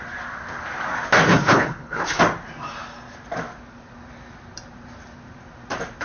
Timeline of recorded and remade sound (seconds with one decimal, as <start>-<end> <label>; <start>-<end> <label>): 0.0-1.3 recorded; 1.3-2.2 remade; 2.2-6.0 recorded